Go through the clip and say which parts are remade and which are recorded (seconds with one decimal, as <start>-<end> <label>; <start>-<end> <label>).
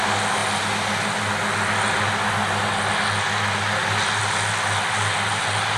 0.0-5.8 recorded